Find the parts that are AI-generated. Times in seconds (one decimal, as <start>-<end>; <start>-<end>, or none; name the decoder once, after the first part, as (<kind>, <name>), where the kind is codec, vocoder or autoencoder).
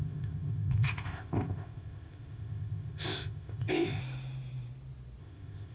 0.0-4.0 (codec, ZipCodec); 5.2-5.7